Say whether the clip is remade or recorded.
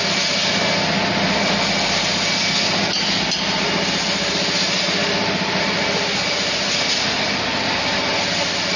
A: recorded